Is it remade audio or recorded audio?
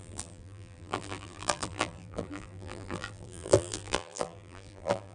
remade